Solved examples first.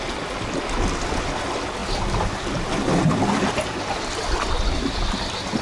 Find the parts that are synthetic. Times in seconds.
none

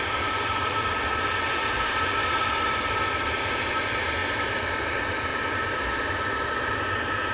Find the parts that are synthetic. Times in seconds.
none

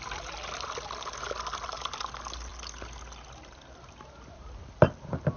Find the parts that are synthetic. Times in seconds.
none

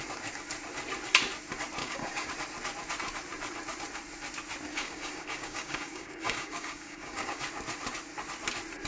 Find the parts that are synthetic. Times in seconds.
1.8-2.3 (codec, DAC); 4.7-7.4